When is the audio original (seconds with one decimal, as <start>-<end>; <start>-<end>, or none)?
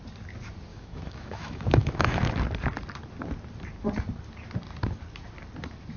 0.0-0.7; 2.3-6.0